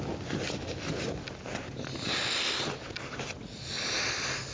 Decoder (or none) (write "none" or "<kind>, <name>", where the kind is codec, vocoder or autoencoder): none